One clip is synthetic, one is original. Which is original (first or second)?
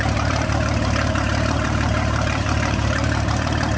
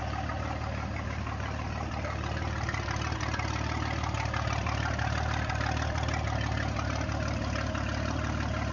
second